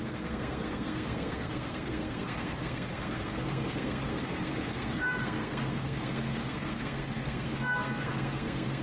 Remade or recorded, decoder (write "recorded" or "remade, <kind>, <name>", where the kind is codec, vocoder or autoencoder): remade, codec, SNAC